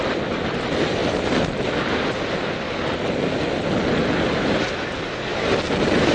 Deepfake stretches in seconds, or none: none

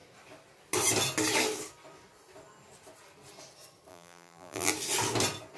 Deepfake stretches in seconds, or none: 3.9-4.7 (vocoder, BigVGAN v2)

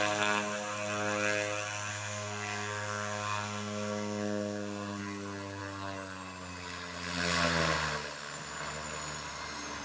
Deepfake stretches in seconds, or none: 1.9-5.0 (codec, SNAC)